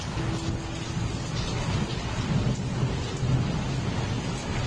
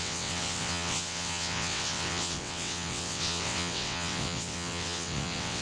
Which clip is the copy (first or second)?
second